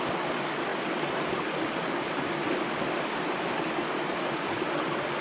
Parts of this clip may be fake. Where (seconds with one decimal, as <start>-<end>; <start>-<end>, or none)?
none